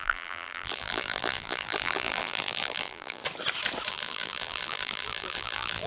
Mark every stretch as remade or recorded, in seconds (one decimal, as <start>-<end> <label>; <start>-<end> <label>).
0.0-3.2 remade; 3.2-3.9 recorded; 3.9-5.9 remade